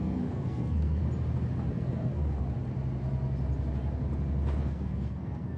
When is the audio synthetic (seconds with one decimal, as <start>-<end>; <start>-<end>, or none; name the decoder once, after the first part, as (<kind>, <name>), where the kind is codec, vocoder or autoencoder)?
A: 0.0-1.0 (codec, SNAC); 1.7-2.1; 4.6-5.6